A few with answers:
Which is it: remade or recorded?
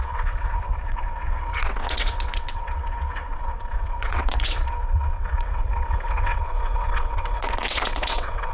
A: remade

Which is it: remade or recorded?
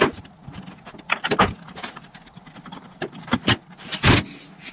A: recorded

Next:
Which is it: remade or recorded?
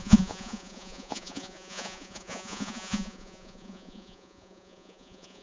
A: remade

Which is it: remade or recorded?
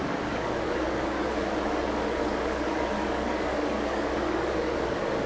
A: remade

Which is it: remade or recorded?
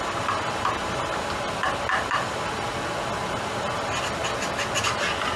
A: recorded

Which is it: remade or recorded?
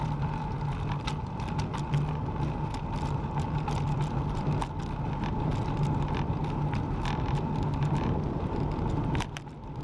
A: recorded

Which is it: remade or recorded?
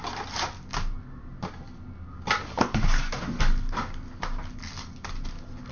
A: recorded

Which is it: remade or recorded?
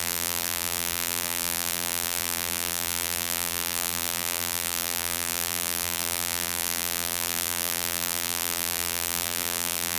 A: remade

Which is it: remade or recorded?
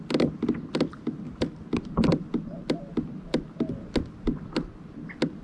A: recorded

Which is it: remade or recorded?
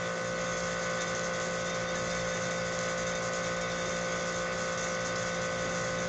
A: recorded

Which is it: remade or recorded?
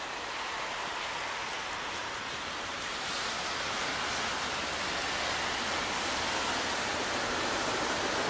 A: recorded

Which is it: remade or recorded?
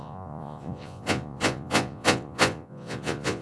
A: remade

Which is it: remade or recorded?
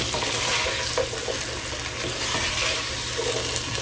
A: recorded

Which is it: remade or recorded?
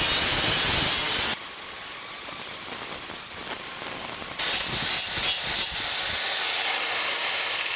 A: recorded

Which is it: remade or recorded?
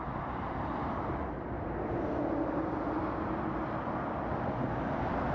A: recorded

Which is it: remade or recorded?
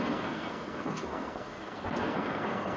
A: remade